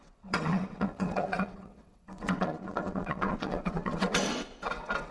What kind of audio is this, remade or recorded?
remade